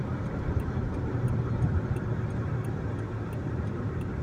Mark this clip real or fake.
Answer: fake